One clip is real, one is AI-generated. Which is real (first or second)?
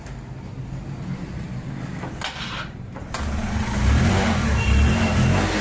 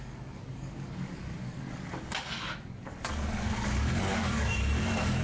first